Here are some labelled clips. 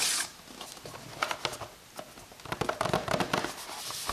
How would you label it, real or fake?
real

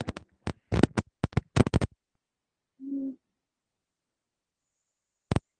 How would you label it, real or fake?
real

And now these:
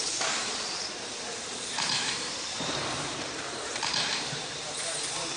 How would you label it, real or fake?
fake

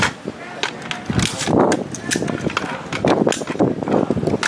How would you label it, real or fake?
real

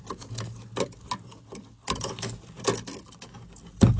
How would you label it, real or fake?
real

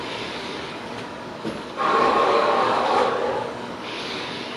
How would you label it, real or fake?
fake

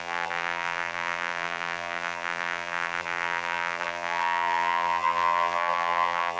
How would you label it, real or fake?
fake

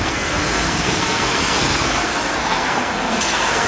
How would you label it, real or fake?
fake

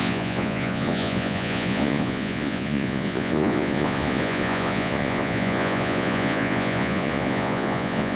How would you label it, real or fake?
fake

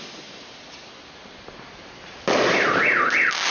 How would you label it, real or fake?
real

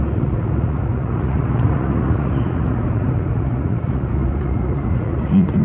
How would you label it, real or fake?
fake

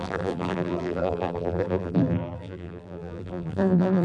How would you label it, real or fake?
fake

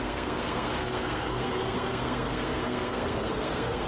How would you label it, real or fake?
fake